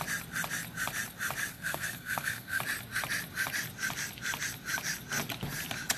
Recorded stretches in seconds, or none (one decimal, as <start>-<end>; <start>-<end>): 0.0-1.5; 2.6-6.0